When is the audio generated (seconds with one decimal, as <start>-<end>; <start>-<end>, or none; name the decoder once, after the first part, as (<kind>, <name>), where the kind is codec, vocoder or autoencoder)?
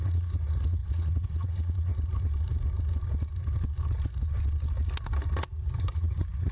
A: 0.0-1.9 (vocoder, Vocos); 5.8-6.5